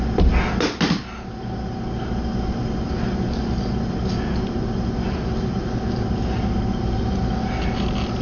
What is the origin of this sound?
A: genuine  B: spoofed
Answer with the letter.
A